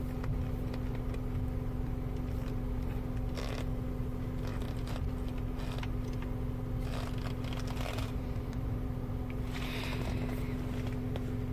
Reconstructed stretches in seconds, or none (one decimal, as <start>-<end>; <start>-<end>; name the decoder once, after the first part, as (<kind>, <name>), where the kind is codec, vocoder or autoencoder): 4.5-5.1 (vocoder, BigVGAN v2); 8.0-9.1